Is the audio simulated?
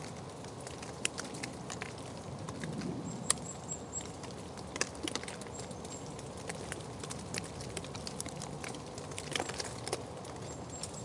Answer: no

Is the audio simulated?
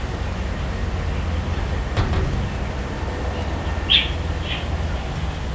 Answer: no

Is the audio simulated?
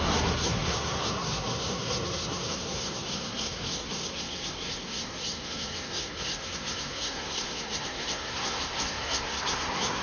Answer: yes